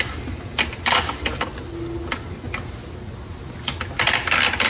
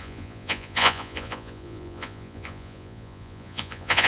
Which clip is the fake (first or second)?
second